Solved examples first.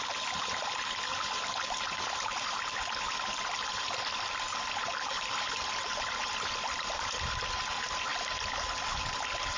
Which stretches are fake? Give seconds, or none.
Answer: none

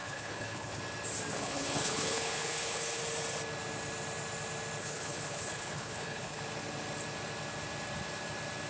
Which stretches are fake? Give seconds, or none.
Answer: 0.0-0.8 (codec, HILCodec); 1.3-3.0; 4.8-6.4

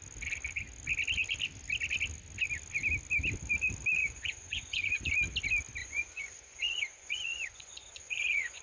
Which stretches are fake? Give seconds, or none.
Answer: 4.0-5.1 (vocoder, Vocos); 5.8-8.6

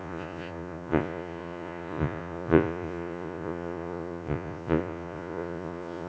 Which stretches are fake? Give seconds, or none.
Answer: 0.0-6.1 (vocoder, Vocos)